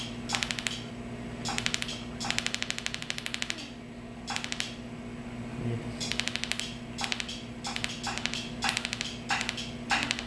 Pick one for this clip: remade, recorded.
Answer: recorded